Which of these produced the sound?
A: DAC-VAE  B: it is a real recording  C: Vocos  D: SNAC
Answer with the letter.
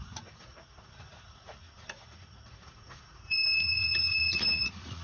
C